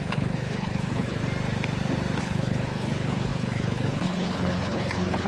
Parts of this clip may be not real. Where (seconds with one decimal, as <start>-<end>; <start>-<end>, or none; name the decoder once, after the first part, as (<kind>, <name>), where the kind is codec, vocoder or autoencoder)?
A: 0.0-1.2 (codec, HILCodec); 2.2-5.3